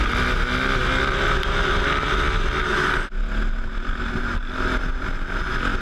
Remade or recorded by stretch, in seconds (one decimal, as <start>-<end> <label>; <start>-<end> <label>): 0.0-5.8 recorded